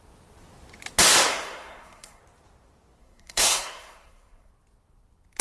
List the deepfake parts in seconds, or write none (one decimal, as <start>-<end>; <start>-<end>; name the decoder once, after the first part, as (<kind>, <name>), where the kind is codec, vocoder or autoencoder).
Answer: 1.3-2.2 (codec, SNAC); 3.0-4.5